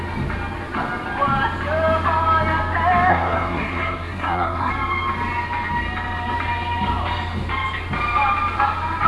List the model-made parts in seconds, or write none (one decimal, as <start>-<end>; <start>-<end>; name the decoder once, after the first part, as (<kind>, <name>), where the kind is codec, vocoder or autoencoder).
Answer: 3.1-4.7 (codec, SNAC)